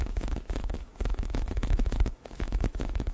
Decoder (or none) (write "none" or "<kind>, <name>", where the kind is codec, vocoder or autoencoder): autoencoder, DAC-VAE